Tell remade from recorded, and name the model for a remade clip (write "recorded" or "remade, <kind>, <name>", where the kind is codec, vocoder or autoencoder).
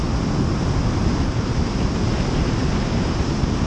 recorded